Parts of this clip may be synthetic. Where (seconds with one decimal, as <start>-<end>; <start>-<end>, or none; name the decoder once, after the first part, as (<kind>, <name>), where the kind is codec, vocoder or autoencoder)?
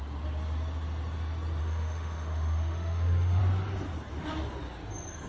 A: 1.6-3.4 (autoencoder, DAC-VAE)